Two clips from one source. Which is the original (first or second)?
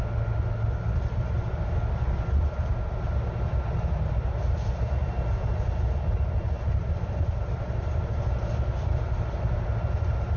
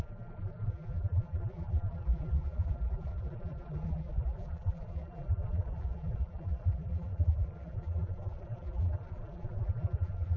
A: first